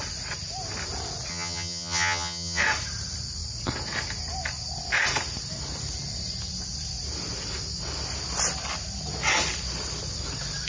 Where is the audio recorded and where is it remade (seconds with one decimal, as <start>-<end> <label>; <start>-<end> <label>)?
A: 0.0-1.3 recorded; 1.3-2.6 remade; 2.6-10.7 recorded